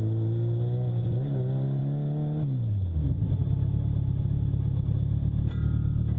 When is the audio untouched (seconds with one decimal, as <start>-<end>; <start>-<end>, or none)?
0.0-6.2